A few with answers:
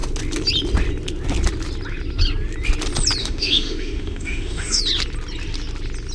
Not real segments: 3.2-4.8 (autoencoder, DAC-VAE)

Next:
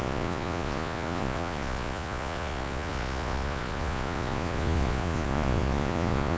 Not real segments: 0.0-6.4 (vocoder, Vocos)

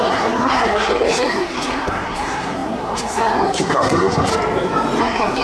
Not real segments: 0.0-4.3 (codec, SNAC); 5.0-5.4

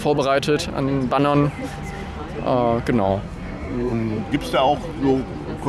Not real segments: 3.1-4.2 (codec, SNAC)

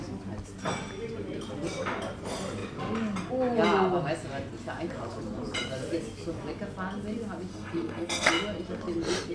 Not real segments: 7.5-8.3 (codec, SNAC)

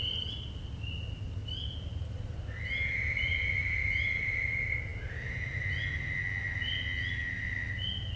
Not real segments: none

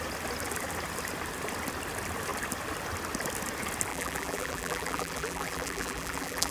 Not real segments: 3.9-6.5 (vocoder, BigVGAN v2)

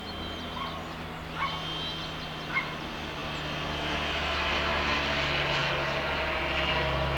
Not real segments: none